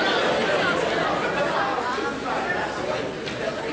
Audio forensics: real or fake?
real